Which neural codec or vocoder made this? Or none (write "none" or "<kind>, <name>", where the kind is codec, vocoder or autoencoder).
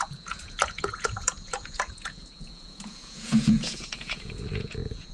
vocoder, Vocos